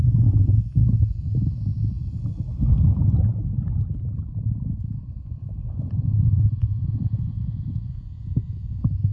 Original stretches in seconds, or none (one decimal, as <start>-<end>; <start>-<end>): 0.8-4.3